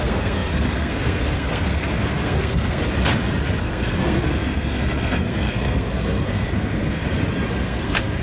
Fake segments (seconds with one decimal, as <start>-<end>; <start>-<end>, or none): 0.0-2.8; 3.6-7.0; 7.5-8.2